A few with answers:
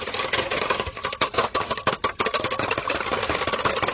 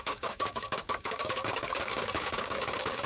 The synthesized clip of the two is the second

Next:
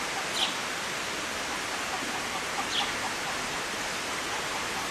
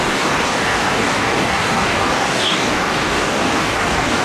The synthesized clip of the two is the second